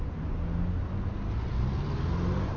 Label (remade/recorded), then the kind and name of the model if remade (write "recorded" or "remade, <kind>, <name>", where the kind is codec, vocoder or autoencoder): recorded